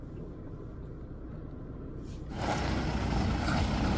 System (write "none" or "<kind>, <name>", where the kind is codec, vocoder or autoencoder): none